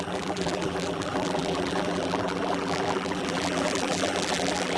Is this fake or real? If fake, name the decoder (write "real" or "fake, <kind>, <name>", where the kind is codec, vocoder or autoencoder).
fake, vocoder, BigVGAN v2